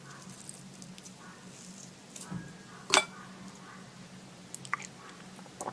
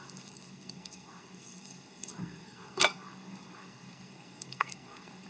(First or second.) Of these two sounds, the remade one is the second